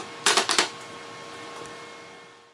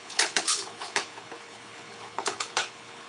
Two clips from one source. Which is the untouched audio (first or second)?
first